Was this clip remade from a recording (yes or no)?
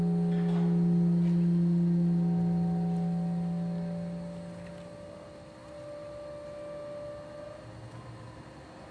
no